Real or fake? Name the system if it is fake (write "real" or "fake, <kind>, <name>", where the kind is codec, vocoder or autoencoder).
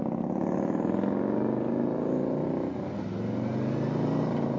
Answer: real